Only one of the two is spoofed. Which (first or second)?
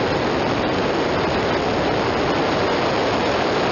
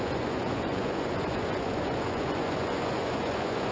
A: second